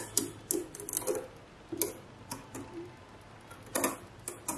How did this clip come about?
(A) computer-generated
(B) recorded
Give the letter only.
B